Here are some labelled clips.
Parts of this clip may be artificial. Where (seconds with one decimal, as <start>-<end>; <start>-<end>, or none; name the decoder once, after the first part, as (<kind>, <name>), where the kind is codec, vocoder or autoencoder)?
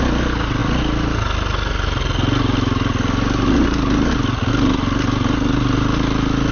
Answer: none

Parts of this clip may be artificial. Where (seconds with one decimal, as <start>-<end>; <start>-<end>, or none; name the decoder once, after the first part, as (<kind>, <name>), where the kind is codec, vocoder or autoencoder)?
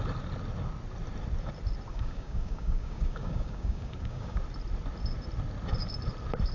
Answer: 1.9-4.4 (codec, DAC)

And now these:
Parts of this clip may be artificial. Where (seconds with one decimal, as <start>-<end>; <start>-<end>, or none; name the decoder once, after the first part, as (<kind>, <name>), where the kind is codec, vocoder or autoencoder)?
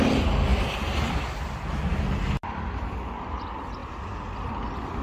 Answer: none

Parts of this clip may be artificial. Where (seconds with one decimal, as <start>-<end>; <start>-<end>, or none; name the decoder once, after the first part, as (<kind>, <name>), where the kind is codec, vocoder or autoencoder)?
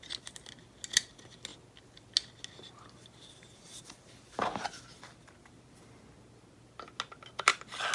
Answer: none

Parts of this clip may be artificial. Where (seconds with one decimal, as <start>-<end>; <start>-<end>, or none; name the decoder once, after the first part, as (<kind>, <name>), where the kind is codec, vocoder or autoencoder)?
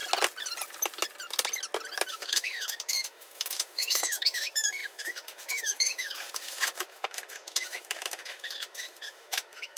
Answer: 2.1-9.8 (autoencoder, DAC-VAE)